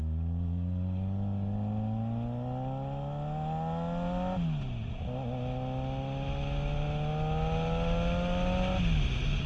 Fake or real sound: real